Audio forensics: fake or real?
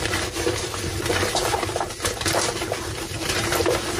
fake